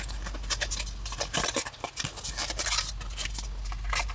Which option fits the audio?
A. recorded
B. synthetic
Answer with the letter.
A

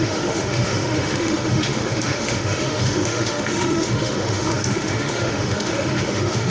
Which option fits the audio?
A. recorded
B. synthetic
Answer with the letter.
B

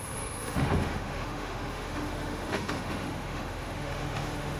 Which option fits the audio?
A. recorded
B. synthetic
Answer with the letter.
B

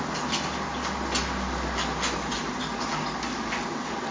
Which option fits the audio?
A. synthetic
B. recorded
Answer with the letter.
B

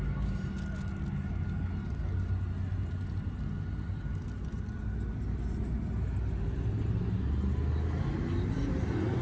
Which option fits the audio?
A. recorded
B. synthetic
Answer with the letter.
A